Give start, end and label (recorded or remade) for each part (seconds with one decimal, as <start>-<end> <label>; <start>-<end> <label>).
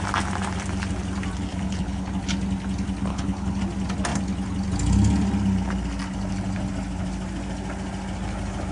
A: 0.0-1.5 recorded; 1.5-2.1 remade; 2.1-3.1 recorded; 3.1-3.6 remade; 3.6-8.7 recorded